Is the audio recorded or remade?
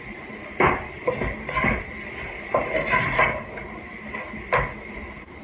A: recorded